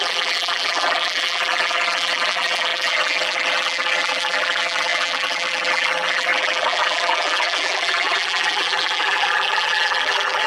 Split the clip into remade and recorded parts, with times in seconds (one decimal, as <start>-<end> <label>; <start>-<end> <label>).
0.0-10.5 remade